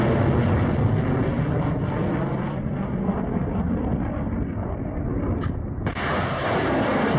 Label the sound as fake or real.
real